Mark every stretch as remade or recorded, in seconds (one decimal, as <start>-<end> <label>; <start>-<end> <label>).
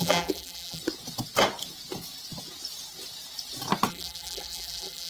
0.0-0.8 remade; 0.8-3.9 recorded; 3.9-5.1 remade